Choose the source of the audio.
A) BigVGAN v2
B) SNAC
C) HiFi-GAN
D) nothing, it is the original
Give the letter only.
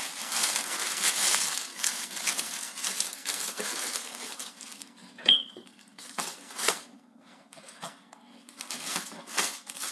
B